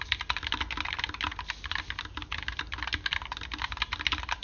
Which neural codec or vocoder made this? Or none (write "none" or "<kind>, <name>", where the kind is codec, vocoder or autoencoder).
none